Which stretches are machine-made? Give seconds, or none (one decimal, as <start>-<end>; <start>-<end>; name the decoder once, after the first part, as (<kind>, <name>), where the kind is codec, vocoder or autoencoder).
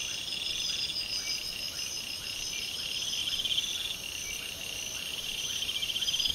5.1-6.3 (vocoder, BigVGAN v2)